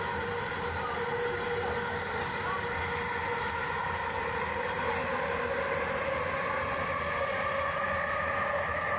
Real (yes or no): yes